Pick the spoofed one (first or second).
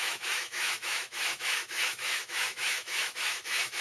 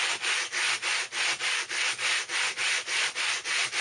first